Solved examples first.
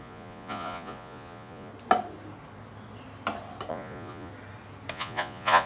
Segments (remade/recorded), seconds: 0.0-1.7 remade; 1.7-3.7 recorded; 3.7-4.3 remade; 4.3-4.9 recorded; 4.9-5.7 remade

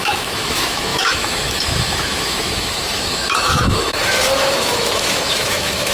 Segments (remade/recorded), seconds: 0.0-5.9 remade

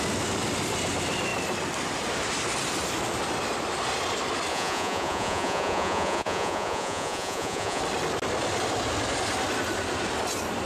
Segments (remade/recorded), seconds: 0.0-4.5 recorded; 4.5-7.8 remade; 7.8-10.7 recorded

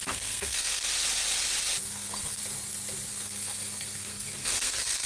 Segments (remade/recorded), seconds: 0.0-0.8 remade; 0.8-1.8 recorded; 1.8-2.4 remade; 2.4-3.1 recorded; 3.1-5.1 remade